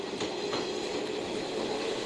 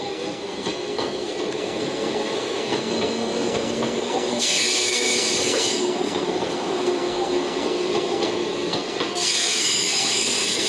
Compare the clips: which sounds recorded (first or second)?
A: first